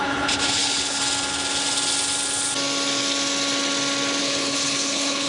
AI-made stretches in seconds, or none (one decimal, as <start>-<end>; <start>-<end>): 0.0-1.0; 4.2-5.3